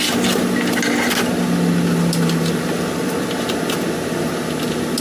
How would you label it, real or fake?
real